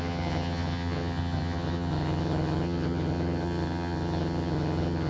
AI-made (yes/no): yes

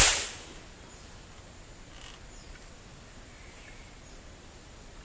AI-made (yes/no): no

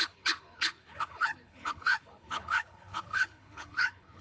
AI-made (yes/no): yes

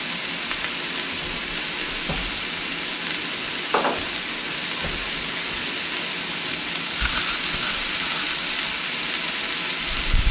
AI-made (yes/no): no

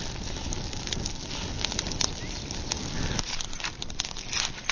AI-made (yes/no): no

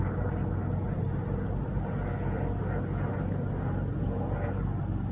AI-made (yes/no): no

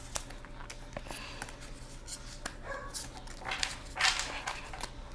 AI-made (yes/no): no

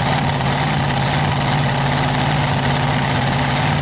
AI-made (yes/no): no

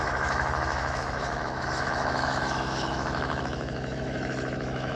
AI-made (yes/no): yes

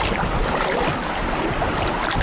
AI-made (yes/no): no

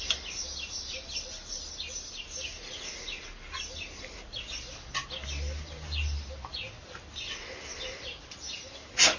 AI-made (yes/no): no